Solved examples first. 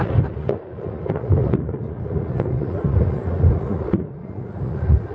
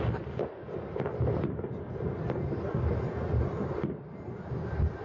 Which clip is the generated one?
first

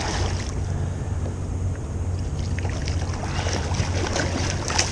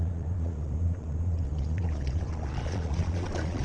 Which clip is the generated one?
second